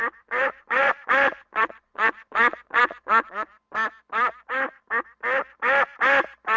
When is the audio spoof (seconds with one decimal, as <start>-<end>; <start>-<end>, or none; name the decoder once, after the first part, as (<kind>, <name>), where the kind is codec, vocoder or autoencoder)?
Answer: 0.0-3.5 (vocoder, Vocos)